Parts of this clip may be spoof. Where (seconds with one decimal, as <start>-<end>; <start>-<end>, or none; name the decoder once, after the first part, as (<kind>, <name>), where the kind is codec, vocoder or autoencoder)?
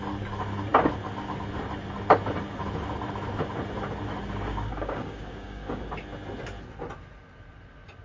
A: 4.5-5.9 (codec, DAC)